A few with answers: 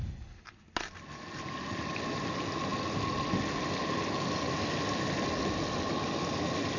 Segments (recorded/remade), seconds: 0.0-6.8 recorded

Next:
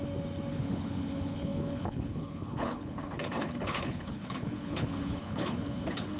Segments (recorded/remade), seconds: 0.0-0.5 recorded; 0.5-6.2 remade